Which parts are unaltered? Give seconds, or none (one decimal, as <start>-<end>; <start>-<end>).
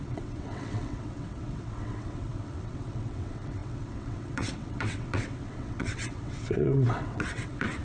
none